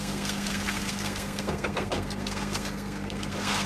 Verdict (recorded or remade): remade